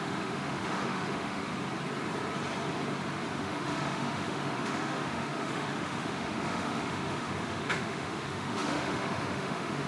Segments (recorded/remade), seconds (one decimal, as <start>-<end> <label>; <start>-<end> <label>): 0.0-1.5 remade; 1.5-3.4 recorded; 3.4-9.9 remade